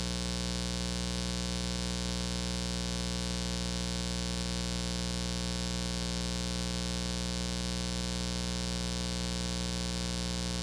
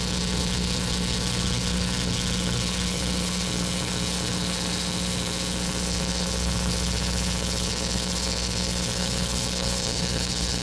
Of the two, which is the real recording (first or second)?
first